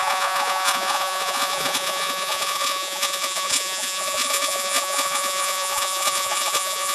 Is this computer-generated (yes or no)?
yes